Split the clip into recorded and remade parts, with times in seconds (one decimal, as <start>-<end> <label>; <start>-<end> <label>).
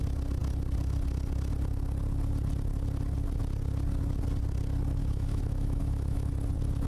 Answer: 0.0-5.0 recorded; 5.0-6.3 remade; 6.3-6.9 recorded